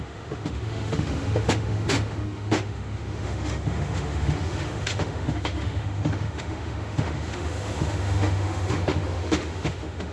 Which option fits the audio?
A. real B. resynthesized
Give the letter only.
B